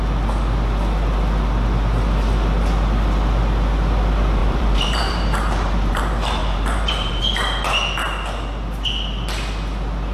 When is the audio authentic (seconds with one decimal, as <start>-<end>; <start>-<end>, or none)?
0.0-4.4; 6.0-6.4; 7.2-10.1